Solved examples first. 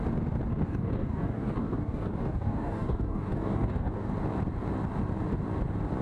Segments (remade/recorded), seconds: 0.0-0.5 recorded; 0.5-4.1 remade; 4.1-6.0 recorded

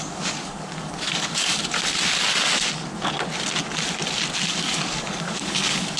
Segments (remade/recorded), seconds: 0.0-1.6 remade; 1.6-4.5 recorded; 4.5-6.0 remade

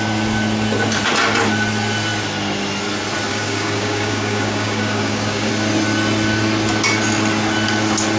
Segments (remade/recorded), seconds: 0.0-3.3 recorded; 3.3-5.5 remade; 5.5-8.2 recorded

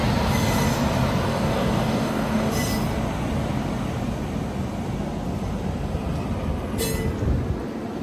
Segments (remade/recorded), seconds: 0.0-1.3 recorded; 1.3-2.5 remade; 2.5-8.0 recorded

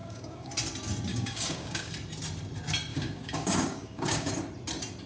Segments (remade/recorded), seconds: 0.0-0.5 remade; 0.5-1.1 recorded; 1.1-1.9 remade; 1.9-2.9 recorded; 2.9-4.3 remade; 4.3-5.1 recorded